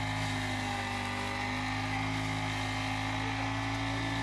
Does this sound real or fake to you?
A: real